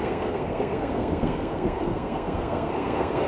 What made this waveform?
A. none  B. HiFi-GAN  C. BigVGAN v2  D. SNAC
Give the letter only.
D